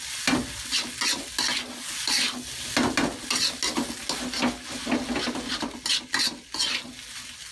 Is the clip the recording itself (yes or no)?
yes